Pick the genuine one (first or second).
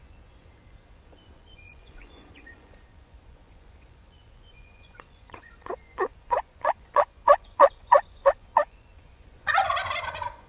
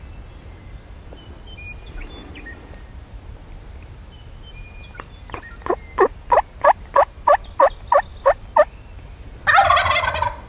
second